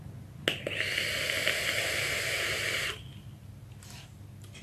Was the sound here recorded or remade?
recorded